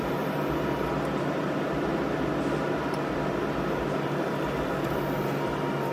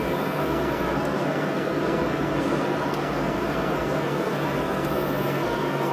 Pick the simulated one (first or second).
second